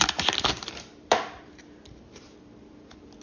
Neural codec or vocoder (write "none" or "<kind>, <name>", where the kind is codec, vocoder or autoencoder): vocoder, BigVGAN v2